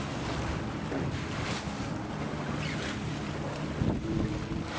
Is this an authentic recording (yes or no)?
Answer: yes